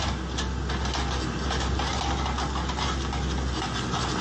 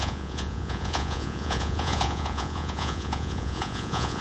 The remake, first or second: second